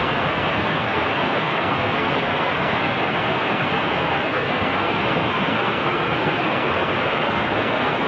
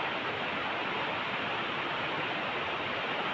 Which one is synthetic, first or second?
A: first